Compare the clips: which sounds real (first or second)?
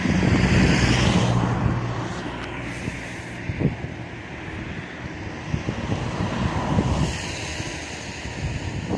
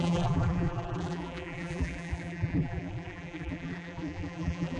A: first